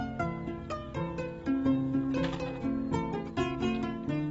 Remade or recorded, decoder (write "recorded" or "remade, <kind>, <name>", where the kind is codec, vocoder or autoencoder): recorded